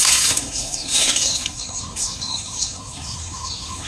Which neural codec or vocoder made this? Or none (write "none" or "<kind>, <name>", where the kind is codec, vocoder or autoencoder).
codec, SNAC